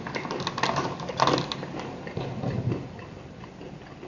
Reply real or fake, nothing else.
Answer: real